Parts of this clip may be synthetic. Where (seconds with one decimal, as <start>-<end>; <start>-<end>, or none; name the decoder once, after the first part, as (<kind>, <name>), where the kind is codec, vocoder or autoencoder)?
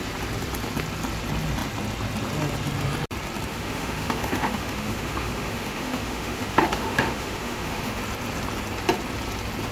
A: 3.5-8.0 (autoencoder, DAC-VAE)